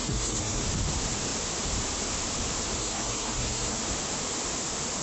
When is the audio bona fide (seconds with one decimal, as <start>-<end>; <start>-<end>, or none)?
0.6-2.8; 3.8-5.0